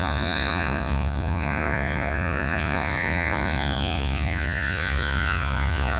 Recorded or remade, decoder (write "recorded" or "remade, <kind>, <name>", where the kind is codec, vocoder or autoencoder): remade, vocoder, Vocos